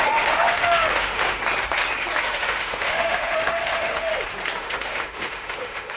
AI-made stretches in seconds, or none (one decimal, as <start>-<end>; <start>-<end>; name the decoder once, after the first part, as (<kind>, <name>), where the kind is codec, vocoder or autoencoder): 0.0-1.4 (autoencoder, DAC-VAE); 2.2-4.1; 4.6-6.0